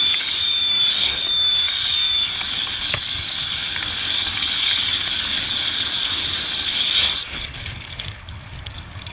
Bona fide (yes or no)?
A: no